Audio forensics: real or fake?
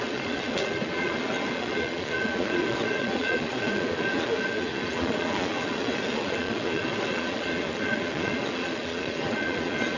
fake